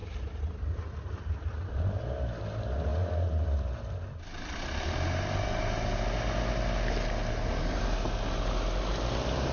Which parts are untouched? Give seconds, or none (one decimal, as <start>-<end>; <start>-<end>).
0.0-9.5